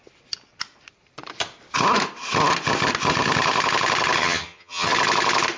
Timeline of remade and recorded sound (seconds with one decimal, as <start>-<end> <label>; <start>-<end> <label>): 0.0-4.2 recorded; 4.2-4.9 remade; 4.9-5.6 recorded

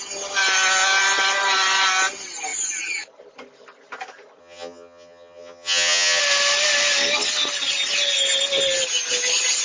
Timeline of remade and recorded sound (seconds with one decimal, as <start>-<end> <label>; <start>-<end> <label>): 0.0-4.4 recorded; 4.4-6.2 remade; 6.2-9.6 recorded

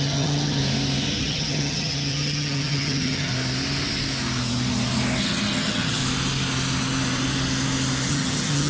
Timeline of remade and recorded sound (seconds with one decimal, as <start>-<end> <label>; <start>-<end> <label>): 0.0-0.6 remade; 0.6-1.2 recorded; 1.2-3.3 remade; 3.3-5.2 recorded; 5.2-6.0 remade; 6.0-8.1 recorded; 8.1-8.7 remade